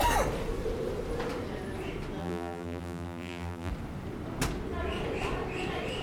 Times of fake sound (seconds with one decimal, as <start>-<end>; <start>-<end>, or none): 2.2-3.7